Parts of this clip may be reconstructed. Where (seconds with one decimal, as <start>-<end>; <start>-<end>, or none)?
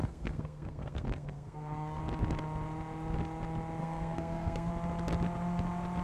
0.0-2.0; 3.8-4.7